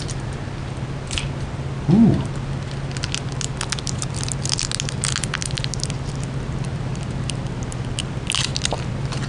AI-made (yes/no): no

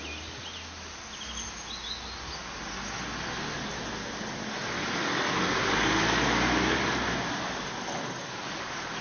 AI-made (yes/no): no